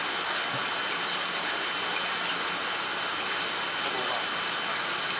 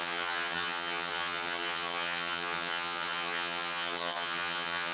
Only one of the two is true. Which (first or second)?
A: first